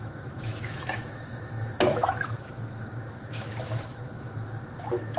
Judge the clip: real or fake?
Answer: fake